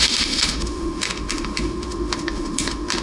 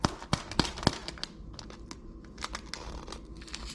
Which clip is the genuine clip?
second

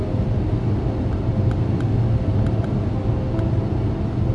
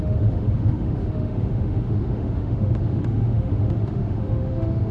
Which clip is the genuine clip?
first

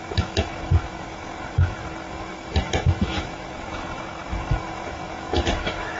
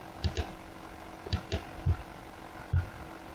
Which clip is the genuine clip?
second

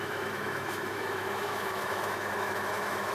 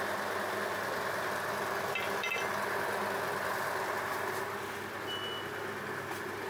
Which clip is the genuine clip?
second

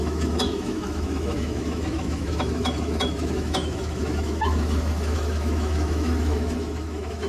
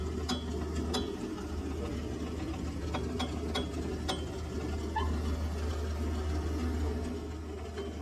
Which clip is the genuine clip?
second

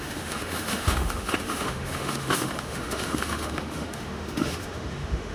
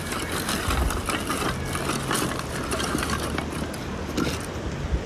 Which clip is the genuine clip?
second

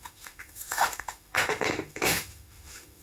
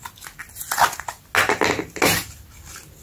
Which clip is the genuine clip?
second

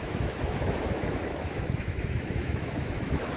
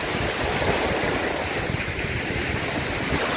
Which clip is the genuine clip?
second